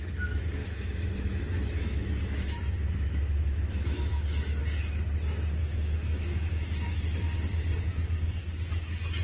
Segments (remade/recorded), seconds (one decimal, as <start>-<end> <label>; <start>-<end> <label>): 0.0-0.6 recorded; 0.6-4.6 remade; 4.6-5.6 recorded; 5.6-7.0 remade; 7.0-9.2 recorded